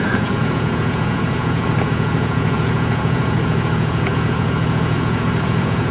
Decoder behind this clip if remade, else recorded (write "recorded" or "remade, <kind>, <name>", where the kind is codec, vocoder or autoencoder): remade, vocoder, Vocos